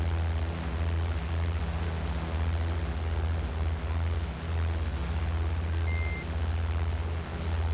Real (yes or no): yes